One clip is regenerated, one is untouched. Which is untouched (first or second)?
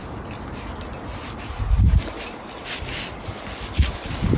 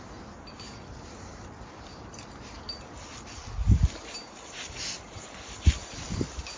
first